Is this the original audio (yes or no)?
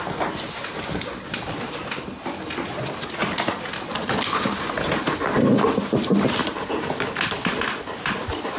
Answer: yes